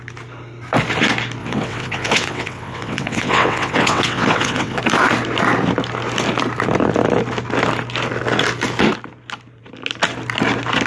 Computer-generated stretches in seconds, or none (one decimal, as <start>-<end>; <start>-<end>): 1.4-4.8